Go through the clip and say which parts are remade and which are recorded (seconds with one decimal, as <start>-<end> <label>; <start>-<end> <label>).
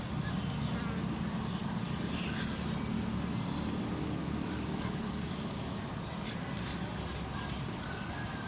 0.0-4.2 recorded; 4.2-5.7 remade; 5.7-8.5 recorded